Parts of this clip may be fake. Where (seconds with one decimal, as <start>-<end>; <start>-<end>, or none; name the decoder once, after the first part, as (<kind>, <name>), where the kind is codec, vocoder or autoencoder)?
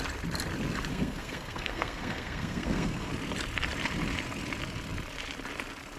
0.9-3.1 (codec, SNAC)